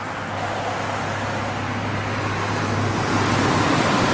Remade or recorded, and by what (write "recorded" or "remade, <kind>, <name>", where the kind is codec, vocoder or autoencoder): recorded